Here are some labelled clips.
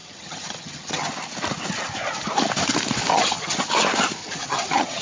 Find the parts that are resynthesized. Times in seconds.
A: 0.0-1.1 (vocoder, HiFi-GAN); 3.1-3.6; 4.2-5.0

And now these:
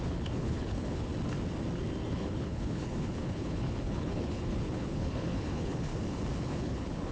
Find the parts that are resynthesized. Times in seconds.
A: 0.0-1.1 (codec, HILCodec); 2.1-5.9; 6.4-7.1

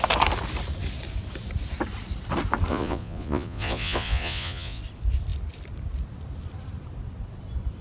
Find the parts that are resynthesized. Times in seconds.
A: 2.7-4.8 (vocoder, Vocos)

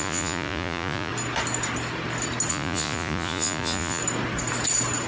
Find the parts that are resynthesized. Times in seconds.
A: 0.0-1.1 (vocoder, Vocos); 2.5-4.0

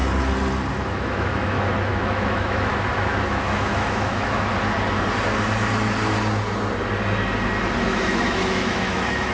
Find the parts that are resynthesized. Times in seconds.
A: 0.7-2.7 (autoencoder, DAC-VAE); 3.3-4.5; 7.8-9.3

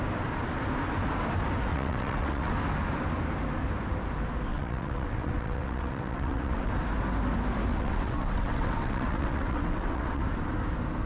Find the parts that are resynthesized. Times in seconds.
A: 1.7-2.5 (vocoder, WaveNeXt); 4.5-6.7; 7.7-10.2

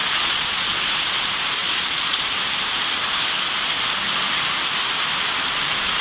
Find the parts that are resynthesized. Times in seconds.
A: 0.0-0.8 (vocoder, Vocos); 1.6-2.2

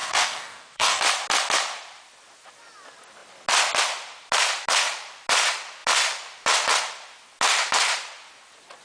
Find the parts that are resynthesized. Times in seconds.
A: 0.0-1.0 (codec, DAC)